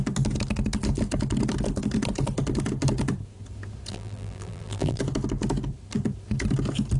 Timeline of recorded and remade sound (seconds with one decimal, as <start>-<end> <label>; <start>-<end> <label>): 0.0-3.9 recorded; 3.9-5.0 remade; 5.0-7.0 recorded